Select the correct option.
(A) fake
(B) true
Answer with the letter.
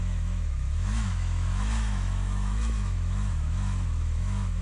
A